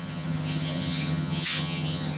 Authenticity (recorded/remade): remade